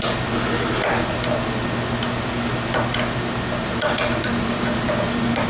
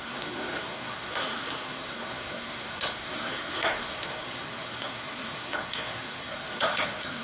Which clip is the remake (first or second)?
second